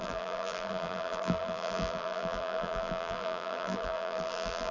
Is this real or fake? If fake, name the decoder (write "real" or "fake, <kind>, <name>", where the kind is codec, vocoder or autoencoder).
fake, vocoder, BigVGAN v2